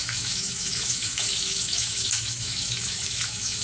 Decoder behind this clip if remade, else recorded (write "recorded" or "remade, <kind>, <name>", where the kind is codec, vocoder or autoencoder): remade, autoencoder, DAC-VAE